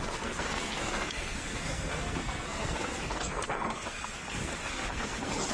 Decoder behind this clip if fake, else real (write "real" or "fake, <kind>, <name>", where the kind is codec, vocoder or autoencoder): fake, codec, SNAC